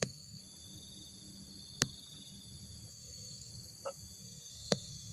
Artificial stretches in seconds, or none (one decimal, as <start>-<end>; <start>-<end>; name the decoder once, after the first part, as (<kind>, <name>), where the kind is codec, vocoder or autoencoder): 0.0-0.4 (codec, SNAC); 2.9-3.5; 4.2-5.1